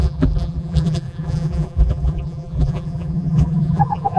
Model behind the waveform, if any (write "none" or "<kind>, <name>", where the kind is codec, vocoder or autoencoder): vocoder, BigVGAN v2